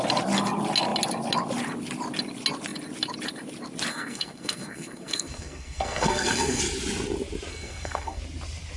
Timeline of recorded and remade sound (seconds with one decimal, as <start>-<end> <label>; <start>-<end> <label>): 0.0-3.9 recorded; 3.9-6.6 remade; 6.6-7.5 recorded; 7.5-8.2 remade; 8.2-8.8 recorded